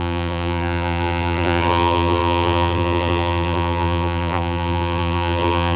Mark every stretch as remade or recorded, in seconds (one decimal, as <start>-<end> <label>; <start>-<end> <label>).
0.0-5.8 remade